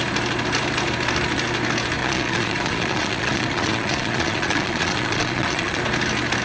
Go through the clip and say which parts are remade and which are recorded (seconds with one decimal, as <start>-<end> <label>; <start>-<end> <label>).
0.0-2.0 recorded; 2.0-5.8 remade; 5.8-6.4 recorded

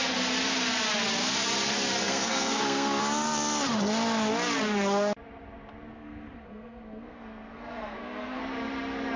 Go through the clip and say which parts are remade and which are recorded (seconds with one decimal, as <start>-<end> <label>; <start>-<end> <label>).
0.0-2.0 recorded; 2.0-3.0 remade; 3.0-5.9 recorded; 5.9-8.4 remade; 8.4-9.2 recorded

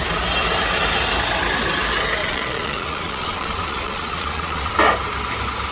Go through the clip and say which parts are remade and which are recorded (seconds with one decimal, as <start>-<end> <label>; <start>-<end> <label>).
0.0-2.2 recorded; 2.2-4.7 remade; 4.7-5.7 recorded

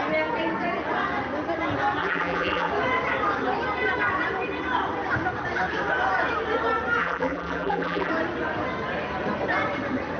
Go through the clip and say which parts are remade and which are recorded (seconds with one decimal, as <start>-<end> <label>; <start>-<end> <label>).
0.0-2.0 recorded; 2.0-2.7 remade; 2.7-7.0 recorded; 7.0-8.1 remade; 8.1-10.2 recorded

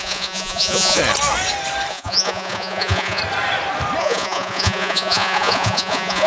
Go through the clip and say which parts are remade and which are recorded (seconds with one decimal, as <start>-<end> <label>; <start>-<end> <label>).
0.0-1.0 remade; 1.0-1.9 recorded; 1.9-3.2 remade; 3.2-4.0 recorded; 4.0-6.3 remade